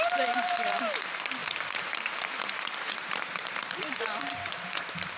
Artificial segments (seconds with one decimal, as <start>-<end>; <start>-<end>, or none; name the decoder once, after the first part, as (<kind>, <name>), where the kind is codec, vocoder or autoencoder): 0.0-5.2 (vocoder, BigVGAN v2)